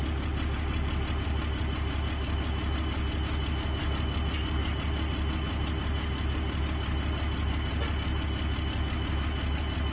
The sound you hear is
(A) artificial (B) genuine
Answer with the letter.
B